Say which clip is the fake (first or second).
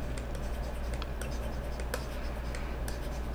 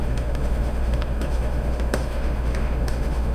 second